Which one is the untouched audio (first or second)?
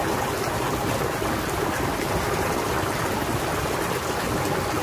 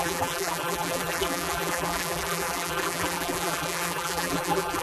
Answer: first